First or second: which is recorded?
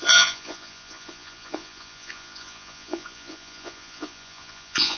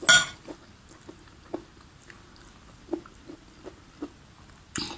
second